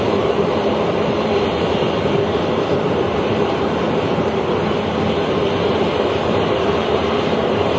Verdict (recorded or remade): remade